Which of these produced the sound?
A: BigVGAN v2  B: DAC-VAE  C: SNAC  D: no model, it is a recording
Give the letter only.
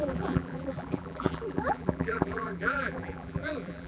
A